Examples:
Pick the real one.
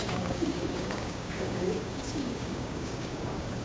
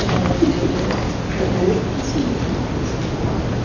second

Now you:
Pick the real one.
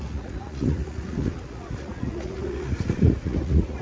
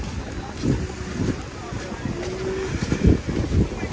second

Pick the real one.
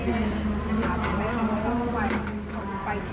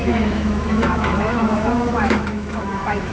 first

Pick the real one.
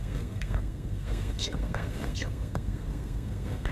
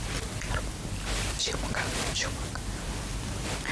second